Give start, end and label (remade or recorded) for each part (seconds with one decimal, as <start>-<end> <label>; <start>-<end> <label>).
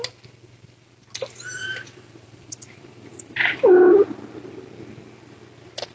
0.0-1.6 recorded; 1.6-3.7 remade; 3.7-5.9 recorded